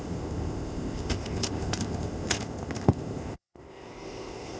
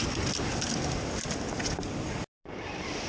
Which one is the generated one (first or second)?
first